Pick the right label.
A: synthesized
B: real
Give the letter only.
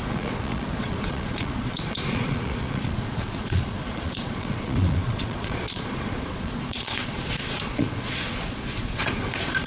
A